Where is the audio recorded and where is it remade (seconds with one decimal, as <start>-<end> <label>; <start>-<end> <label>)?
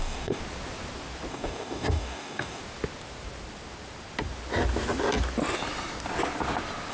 0.0-0.4 remade; 0.4-1.3 recorded; 1.3-2.6 remade; 2.6-6.9 recorded